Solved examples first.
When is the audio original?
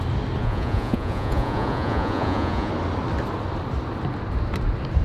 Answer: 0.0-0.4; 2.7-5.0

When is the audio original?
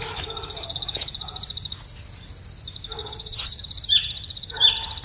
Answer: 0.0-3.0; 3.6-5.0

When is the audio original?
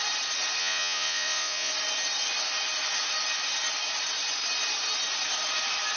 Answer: 0.0-0.6; 1.7-6.0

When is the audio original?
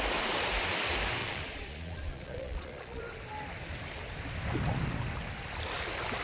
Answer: 0.0-1.2; 3.0-6.2